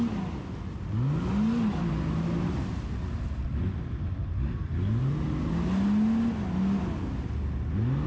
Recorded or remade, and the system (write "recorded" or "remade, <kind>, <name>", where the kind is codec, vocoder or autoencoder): recorded